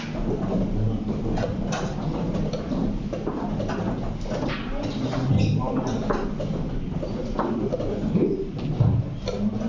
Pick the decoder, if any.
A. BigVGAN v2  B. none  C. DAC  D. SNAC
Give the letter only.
B